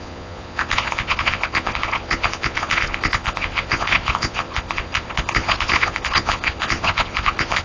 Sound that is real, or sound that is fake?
fake